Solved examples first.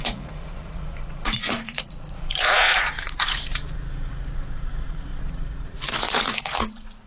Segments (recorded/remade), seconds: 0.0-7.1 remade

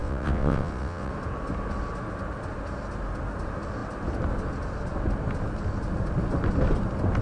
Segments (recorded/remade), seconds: 0.0-1.1 remade; 1.1-7.2 recorded